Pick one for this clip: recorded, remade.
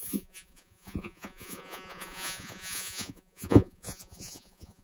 remade